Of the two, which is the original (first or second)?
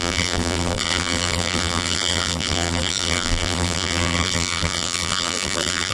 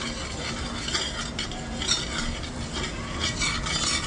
second